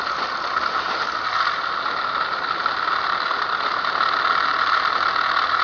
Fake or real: real